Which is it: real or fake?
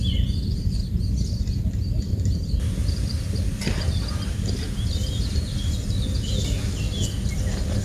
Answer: real